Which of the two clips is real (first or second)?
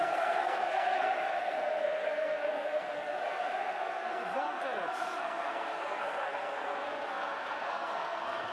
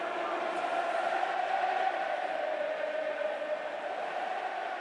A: second